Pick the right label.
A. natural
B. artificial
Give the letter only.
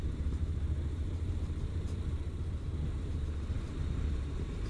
B